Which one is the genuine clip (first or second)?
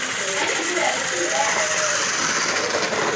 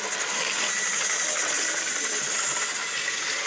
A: second